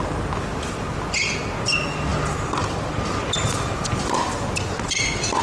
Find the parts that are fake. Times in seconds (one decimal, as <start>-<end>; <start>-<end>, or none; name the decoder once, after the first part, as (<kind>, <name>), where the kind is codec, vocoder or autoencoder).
none

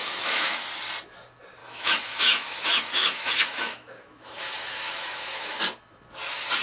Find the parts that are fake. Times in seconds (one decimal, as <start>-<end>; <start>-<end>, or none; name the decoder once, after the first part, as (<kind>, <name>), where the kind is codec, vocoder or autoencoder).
0.0-0.7 (autoencoder, DAC-VAE); 1.6-5.6

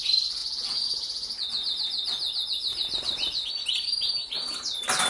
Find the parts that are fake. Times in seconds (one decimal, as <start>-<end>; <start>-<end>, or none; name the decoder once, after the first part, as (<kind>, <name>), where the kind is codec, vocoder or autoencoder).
none